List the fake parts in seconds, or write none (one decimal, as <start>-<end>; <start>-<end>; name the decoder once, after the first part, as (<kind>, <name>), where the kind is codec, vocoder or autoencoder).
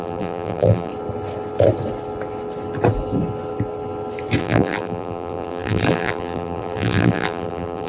0.0-0.9 (vocoder, BigVGAN v2); 4.4-7.9